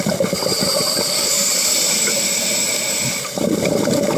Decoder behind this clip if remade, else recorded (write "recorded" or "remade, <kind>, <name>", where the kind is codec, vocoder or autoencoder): remade, vocoder, BigVGAN v2